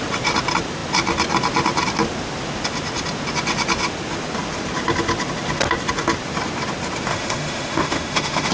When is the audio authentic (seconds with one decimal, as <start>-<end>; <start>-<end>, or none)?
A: 0.0-7.1